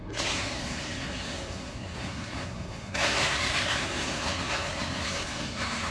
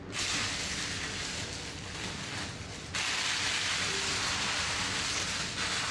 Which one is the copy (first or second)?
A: first